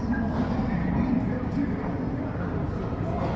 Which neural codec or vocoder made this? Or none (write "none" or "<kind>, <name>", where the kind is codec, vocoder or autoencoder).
none